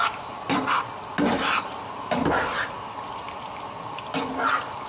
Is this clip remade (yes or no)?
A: no